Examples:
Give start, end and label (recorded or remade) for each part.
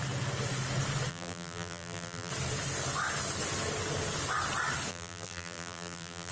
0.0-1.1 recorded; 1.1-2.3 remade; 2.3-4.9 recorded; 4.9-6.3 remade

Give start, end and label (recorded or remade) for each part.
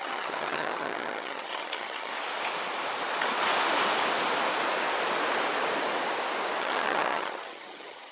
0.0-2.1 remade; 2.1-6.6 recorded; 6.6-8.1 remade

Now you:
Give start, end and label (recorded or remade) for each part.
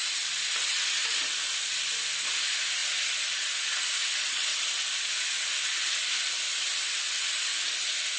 0.0-8.2 recorded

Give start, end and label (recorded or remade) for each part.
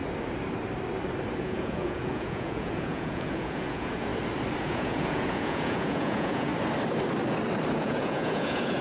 0.0-1.4 recorded; 1.4-4.1 remade; 4.1-4.6 recorded; 4.6-6.5 remade; 6.5-7.7 recorded; 7.7-8.8 remade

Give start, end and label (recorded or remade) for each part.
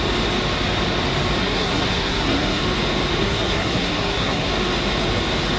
0.0-1.4 recorded; 1.4-2.6 remade; 2.6-3.2 recorded; 3.2-4.5 remade; 4.5-5.6 recorded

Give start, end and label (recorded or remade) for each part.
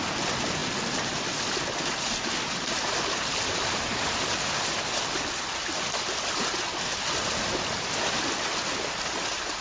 0.0-9.6 recorded